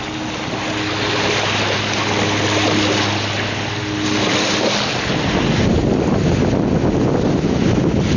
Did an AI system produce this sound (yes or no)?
no